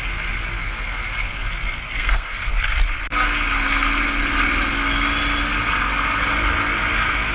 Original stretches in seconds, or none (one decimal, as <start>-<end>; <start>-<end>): 0.0-2.0; 2.5-7.3